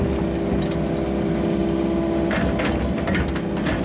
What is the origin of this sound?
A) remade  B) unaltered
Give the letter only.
B